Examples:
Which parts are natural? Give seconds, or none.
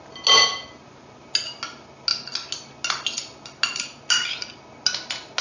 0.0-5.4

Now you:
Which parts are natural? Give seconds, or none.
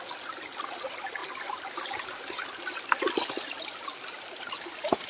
0.0-5.1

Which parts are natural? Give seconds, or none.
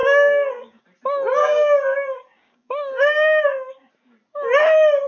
0.8-1.4; 3.9-5.1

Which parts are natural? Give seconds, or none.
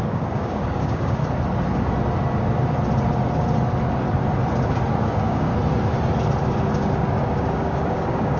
1.2-5.0; 5.5-6.7